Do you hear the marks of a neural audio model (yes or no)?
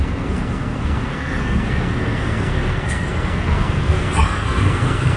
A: yes